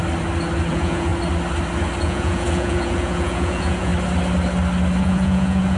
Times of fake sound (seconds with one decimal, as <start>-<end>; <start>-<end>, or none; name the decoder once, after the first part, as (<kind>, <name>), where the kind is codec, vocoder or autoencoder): 0.7-1.1 (vocoder, Vocos); 2.0-3.9; 5.0-5.8